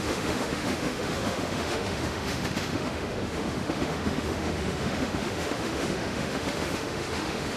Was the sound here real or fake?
fake